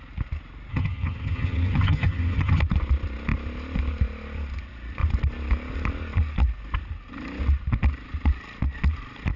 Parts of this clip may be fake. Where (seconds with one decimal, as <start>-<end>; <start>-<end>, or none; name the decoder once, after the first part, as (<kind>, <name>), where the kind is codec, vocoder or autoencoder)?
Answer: 0.7-2.6 (vocoder, HiFi-GAN)